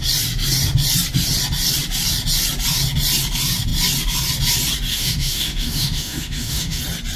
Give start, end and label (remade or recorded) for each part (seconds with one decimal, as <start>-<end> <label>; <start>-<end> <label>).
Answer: 0.0-4.9 recorded; 4.9-6.8 remade; 6.8-7.2 recorded